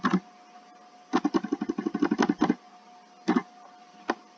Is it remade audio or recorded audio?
recorded